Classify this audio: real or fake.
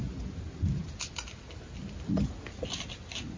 real